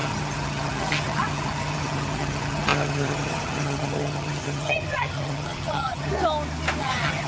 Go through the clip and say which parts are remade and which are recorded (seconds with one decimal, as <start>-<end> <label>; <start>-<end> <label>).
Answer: 0.0-6.1 remade; 6.1-6.8 recorded; 6.8-7.3 remade